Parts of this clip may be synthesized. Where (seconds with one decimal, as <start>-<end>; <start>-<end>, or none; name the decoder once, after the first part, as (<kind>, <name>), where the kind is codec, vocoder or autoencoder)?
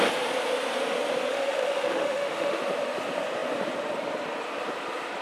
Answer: 1.3-2.6 (autoencoder, DAC-VAE)